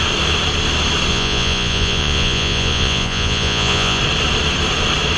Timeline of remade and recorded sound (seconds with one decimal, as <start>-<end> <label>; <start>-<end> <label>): 0.0-1.1 recorded; 1.1-4.0 remade; 4.0-5.2 recorded